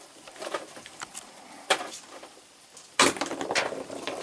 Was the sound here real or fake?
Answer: fake